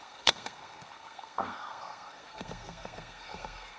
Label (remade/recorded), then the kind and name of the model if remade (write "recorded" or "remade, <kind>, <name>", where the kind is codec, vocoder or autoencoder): remade, codec, SNAC